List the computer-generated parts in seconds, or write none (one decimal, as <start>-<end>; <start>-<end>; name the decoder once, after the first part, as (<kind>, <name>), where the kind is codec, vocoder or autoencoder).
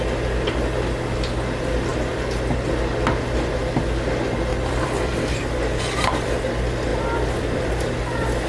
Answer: 4.5-5.5 (vocoder, BigVGAN v2); 6.9-7.7